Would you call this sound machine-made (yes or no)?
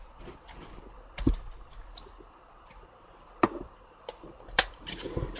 yes